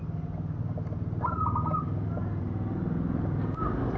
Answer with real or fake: real